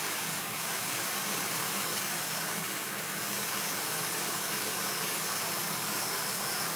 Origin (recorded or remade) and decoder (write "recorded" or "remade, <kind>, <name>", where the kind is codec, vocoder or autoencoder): remade, codec, DAC